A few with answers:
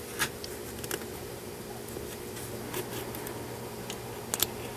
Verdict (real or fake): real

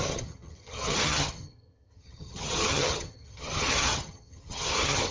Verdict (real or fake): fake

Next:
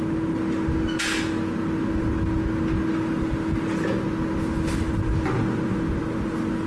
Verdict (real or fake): real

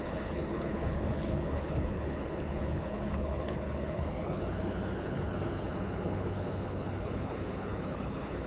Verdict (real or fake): fake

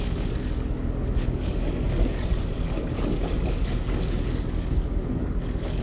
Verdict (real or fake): fake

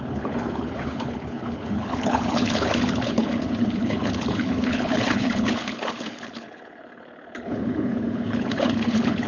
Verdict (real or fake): fake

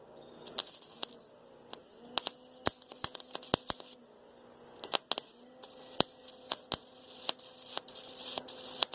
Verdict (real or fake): real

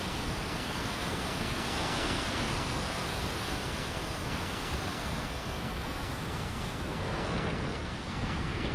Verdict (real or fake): fake